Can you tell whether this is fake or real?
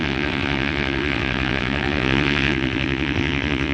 fake